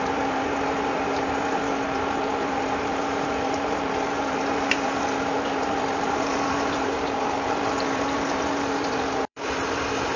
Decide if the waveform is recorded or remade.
remade